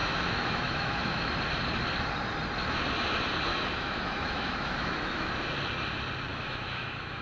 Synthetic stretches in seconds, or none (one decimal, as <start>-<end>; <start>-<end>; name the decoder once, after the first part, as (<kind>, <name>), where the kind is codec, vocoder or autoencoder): 0.0-1.3 (autoencoder, DAC-VAE); 3.5-5.3; 6.3-7.2